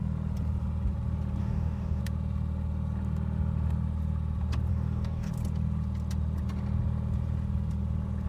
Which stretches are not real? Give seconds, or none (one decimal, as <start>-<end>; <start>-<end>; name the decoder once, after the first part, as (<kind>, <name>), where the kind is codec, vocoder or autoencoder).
1.4-2.0 (codec, DAC); 4.7-5.3